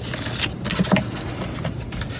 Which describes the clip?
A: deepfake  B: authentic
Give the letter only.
B